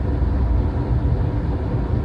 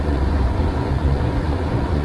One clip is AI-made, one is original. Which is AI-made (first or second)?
second